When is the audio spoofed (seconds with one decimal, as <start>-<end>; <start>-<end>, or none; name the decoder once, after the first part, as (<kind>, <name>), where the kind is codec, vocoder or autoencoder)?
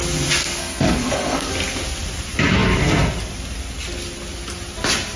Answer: 0.4-1.5 (codec, SNAC)